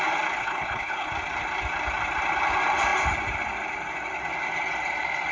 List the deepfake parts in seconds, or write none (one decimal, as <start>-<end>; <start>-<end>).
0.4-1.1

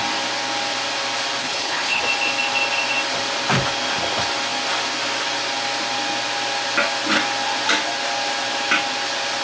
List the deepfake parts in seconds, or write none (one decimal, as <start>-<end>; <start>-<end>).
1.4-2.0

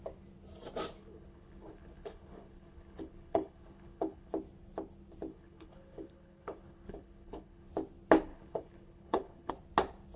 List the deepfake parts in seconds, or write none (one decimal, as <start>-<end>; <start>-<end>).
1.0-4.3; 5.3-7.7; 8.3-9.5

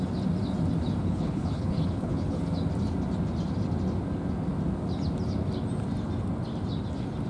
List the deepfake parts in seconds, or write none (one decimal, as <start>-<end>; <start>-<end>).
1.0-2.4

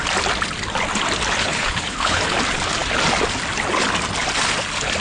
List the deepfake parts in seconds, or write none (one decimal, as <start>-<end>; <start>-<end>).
1.4-2.2

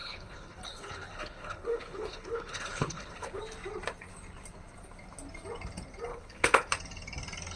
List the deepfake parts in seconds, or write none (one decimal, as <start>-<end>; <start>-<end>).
0.0-3.4; 6.1-6.7

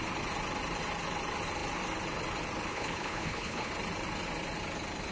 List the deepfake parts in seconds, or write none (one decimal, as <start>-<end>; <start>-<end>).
2.7-3.7

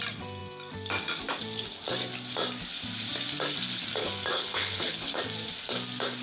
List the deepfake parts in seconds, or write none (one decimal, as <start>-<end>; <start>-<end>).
4.3-5.2